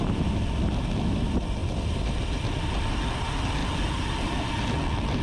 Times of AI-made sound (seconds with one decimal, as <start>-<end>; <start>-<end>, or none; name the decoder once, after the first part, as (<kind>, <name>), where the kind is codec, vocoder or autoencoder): none